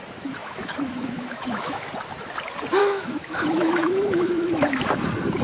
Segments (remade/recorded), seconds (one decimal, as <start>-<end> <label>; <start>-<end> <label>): 0.0-0.4 recorded; 0.4-1.9 remade; 1.9-2.8 recorded; 2.8-4.7 remade; 4.7-5.4 recorded